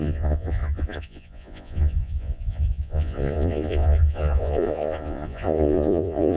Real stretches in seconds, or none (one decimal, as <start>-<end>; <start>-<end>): none